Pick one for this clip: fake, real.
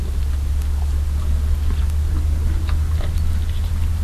real